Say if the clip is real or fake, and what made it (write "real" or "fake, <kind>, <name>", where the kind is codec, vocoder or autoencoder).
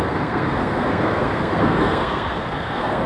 fake, codec, SNAC